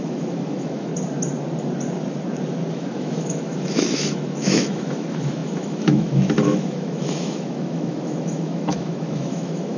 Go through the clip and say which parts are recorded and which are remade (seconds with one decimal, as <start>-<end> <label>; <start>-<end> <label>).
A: 0.0-0.9 remade; 0.9-2.7 recorded; 2.7-9.8 remade